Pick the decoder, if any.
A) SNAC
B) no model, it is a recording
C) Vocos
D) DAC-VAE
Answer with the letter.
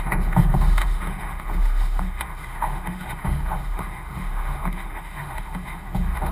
D